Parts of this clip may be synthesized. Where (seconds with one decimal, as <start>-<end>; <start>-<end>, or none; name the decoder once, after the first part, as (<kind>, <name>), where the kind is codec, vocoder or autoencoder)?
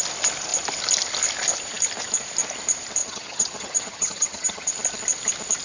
3.0-4.7 (vocoder, HiFi-GAN)